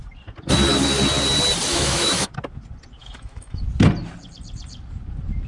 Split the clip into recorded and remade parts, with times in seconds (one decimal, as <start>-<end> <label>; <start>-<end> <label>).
0.0-1.7 recorded; 1.7-2.3 remade; 2.3-3.0 recorded; 3.0-3.6 remade; 3.6-5.5 recorded